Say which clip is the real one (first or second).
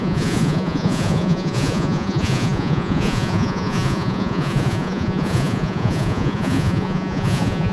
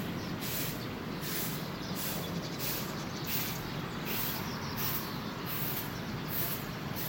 second